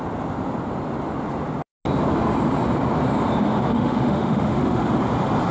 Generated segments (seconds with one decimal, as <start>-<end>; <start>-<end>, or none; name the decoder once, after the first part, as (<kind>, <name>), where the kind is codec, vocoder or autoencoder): 3.7-4.9 (autoencoder, DAC-VAE)